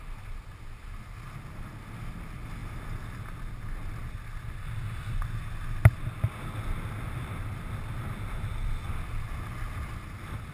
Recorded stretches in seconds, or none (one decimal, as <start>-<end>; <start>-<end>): 0.0-10.5